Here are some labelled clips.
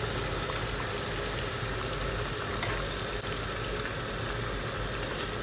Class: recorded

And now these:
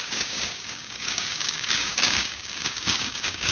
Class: remade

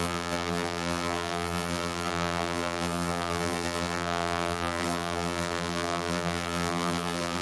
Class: remade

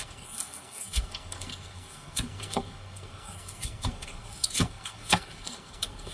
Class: remade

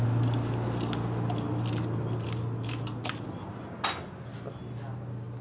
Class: recorded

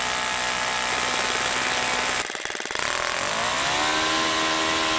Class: recorded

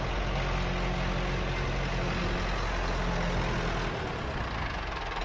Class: recorded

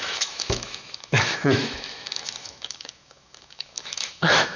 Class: remade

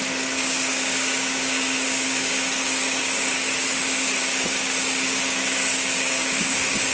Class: remade